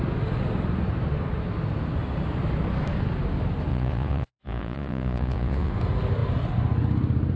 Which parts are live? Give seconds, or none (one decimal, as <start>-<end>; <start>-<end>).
0.0-3.7; 5.7-7.4